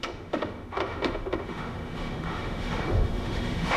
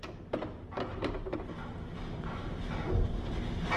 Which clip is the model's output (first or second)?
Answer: first